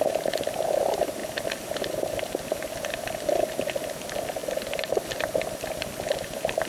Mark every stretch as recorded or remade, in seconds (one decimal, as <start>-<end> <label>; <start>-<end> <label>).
0.0-4.4 recorded; 4.4-5.8 remade; 5.8-6.7 recorded